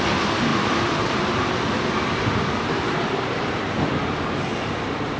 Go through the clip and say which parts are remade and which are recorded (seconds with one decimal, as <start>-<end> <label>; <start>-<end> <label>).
0.0-0.5 recorded; 0.5-1.5 remade; 1.5-5.2 recorded